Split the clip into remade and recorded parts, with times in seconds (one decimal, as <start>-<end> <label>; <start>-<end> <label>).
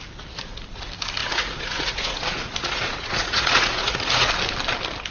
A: 0.0-1.2 recorded; 1.2-4.3 remade; 4.3-5.1 recorded